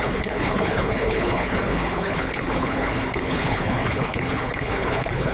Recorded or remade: remade